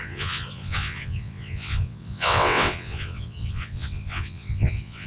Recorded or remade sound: remade